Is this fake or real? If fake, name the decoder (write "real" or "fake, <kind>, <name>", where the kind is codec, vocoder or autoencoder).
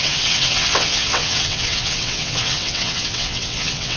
fake, vocoder, WaveNeXt